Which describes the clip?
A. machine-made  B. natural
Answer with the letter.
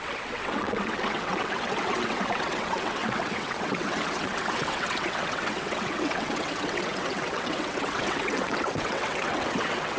A